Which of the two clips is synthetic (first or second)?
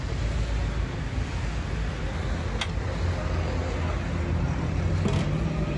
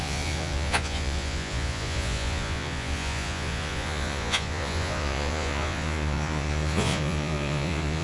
second